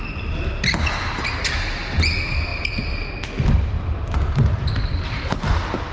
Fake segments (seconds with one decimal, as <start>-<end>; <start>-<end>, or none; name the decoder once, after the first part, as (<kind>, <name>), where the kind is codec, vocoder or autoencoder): none

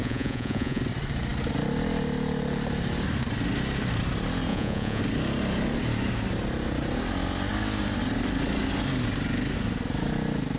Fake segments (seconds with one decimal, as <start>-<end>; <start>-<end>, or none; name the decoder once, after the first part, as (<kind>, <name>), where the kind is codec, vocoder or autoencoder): 0.0-0.8 (vocoder, Vocos); 4.5-5.0